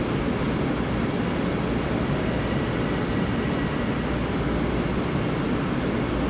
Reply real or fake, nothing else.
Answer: real